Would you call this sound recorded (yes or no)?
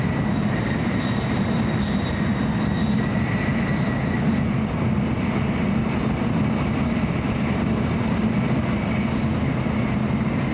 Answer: yes